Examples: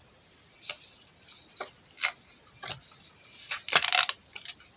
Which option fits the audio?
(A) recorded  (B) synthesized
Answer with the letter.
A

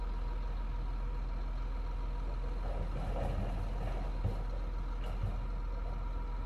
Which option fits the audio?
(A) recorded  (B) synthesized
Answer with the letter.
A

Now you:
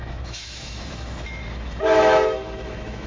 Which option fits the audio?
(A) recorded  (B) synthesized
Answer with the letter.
B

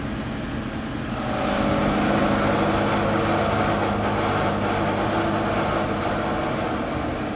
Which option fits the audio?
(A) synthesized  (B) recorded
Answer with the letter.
B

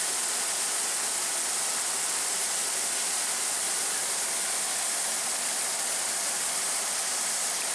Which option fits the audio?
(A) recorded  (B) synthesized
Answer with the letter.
A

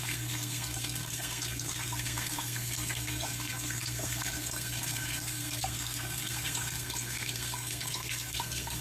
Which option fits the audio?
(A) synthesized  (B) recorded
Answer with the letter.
A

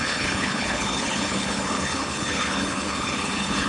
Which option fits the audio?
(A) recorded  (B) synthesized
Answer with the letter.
B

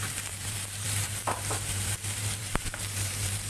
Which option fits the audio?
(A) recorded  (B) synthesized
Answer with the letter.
B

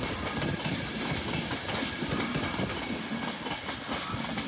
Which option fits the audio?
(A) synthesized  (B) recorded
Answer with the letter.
B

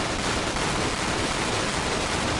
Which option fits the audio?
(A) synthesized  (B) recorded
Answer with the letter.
A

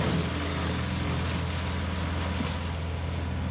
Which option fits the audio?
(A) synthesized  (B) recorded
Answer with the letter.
B